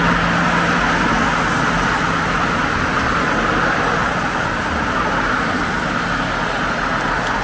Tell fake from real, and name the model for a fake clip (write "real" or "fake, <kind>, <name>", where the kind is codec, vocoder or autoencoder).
real